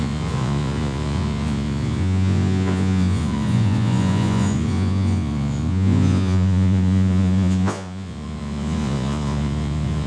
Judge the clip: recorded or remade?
remade